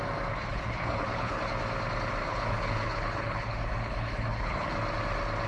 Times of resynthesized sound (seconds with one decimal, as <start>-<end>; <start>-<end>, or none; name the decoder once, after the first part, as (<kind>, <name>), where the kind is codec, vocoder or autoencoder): 0.5-1.5 (codec, HILCodec); 2.2-4.7